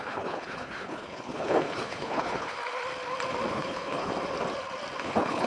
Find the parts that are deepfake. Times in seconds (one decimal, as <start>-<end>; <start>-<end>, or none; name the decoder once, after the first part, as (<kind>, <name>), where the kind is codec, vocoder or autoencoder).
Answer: 0.0-2.6 (codec, HILCodec); 3.5-4.1; 5.0-5.5